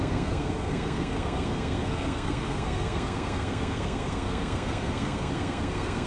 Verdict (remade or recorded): remade